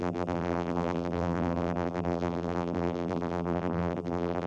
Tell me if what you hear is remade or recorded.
remade